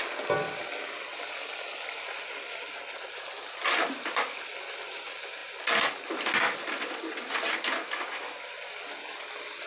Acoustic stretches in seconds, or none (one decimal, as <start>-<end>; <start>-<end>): 0.0-9.7